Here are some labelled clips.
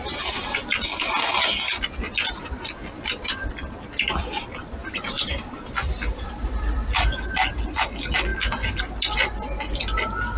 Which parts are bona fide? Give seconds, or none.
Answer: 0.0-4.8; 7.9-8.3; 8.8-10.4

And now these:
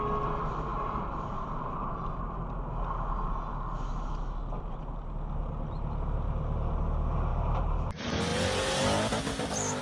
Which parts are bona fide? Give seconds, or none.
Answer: 0.0-0.7; 1.5-7.3; 7.9-8.3; 8.8-9.8